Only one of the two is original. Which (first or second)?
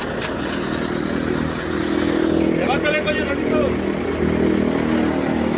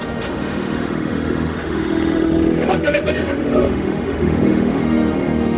first